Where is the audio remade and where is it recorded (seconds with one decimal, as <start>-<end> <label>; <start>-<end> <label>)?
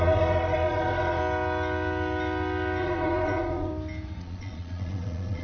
0.0-1.2 remade; 1.2-2.8 recorded; 2.8-3.7 remade; 3.7-4.2 recorded; 4.2-5.4 remade